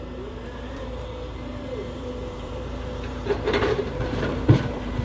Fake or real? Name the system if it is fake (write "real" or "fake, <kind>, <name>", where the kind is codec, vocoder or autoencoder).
fake, vocoder, BigVGAN v2